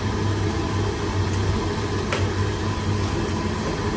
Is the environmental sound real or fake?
real